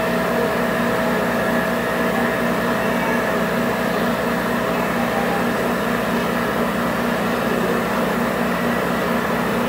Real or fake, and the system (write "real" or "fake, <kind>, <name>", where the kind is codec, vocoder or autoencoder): real